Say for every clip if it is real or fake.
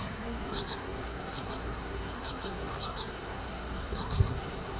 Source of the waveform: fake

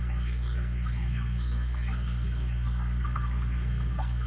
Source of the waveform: fake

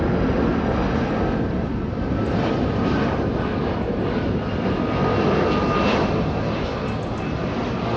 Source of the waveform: real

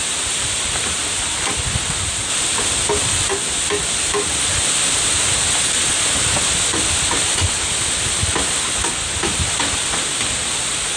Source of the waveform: real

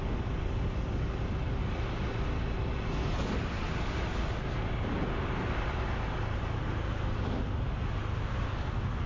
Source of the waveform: real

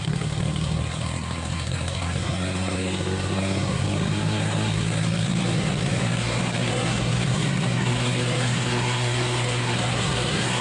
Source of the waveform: fake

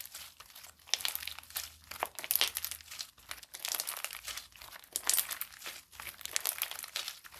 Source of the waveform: real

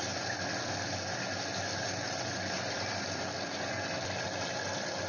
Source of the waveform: real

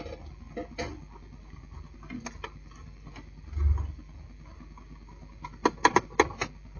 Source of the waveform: real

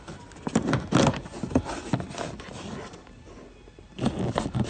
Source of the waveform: real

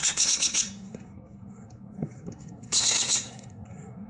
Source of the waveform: fake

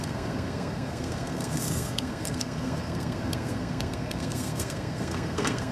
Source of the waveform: fake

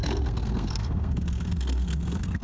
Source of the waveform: fake